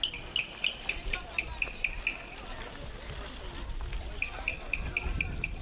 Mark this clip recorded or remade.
recorded